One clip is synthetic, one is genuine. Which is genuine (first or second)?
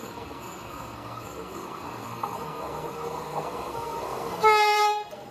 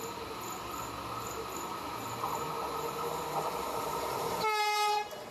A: second